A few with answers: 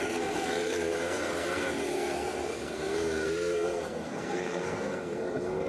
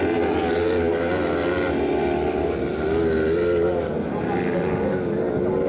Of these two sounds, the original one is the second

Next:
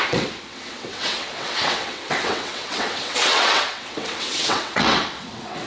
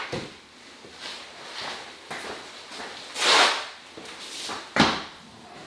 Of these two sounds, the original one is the second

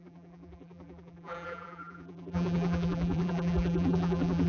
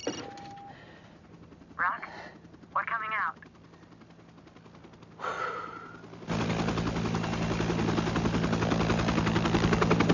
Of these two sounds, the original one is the second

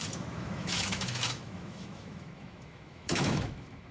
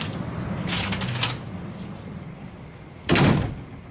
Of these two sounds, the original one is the second